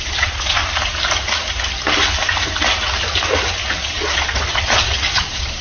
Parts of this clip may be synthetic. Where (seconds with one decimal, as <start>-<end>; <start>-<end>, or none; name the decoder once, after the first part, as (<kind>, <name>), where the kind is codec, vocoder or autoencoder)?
0.0-0.6 (vocoder, Vocos); 3.8-5.6